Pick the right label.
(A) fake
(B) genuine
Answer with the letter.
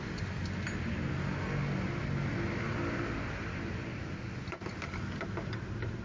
B